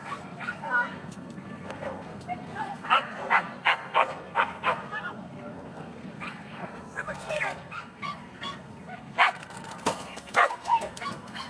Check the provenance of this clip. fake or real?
fake